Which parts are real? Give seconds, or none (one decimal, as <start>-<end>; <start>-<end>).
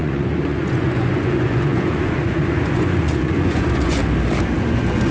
4.0-4.6